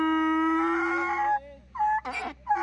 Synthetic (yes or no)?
no